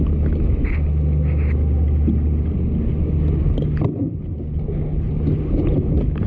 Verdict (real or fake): real